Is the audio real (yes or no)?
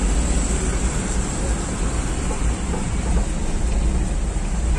yes